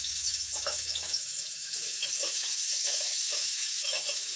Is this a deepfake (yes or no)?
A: yes